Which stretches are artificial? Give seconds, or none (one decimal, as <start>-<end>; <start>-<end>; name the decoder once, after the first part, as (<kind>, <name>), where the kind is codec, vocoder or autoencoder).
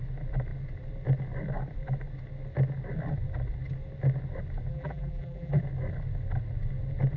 4.7-5.6 (vocoder, BigVGAN v2)